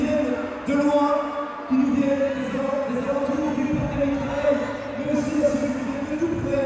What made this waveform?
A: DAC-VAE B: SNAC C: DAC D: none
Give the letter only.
D